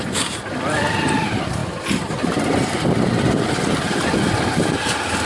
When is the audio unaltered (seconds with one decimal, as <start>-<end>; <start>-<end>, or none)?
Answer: 1.6-4.8

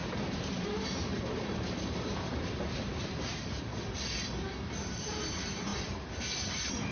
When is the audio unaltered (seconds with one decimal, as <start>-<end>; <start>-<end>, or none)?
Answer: 3.5-6.9

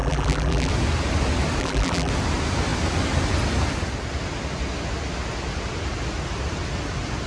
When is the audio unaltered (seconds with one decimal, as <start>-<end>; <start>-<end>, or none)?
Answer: 0.7-1.6; 2.1-7.3

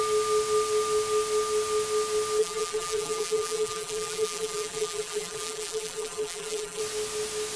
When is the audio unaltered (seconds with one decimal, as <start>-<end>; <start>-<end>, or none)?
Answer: 0.0-2.4; 6.8-7.6

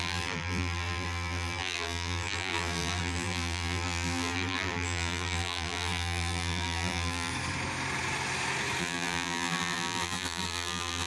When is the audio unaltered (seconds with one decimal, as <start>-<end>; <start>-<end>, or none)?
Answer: 7.3-8.8

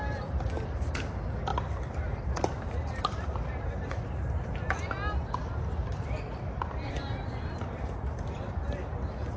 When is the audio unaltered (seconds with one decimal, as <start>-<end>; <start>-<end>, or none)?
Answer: 0.0-1.5; 4.5-5.4; 8.9-9.4